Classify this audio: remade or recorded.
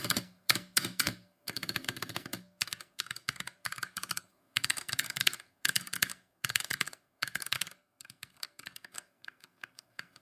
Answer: remade